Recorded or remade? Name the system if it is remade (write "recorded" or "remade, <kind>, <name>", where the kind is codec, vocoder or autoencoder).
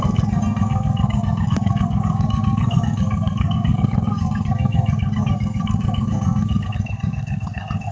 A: remade, codec, SNAC